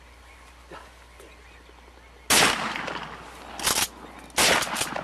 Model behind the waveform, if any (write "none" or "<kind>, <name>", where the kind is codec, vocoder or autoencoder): none